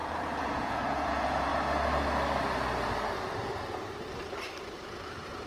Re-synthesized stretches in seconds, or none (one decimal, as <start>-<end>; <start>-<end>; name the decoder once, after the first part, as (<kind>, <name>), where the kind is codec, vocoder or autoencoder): 0.0-1.5 (vocoder, Vocos); 4.8-5.5